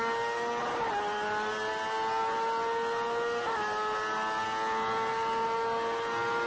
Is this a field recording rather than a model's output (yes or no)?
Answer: yes